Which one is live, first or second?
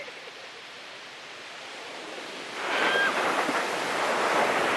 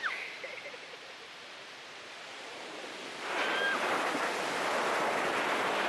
second